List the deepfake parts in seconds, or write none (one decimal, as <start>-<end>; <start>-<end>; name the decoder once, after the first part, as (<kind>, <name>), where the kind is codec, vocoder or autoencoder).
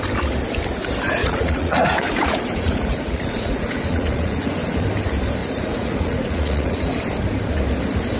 1.2-4.8 (vocoder, Vocos); 5.4-6.9